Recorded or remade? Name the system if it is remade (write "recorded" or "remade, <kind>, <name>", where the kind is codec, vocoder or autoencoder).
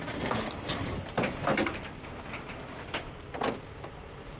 remade, vocoder, BigVGAN v2